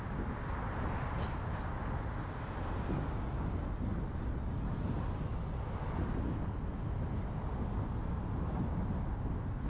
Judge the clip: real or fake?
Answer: real